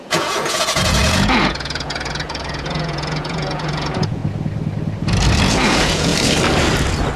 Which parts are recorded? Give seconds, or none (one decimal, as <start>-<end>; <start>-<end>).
4.2-5.4; 6.1-7.2